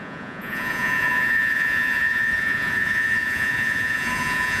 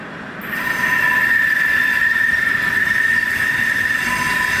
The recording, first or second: second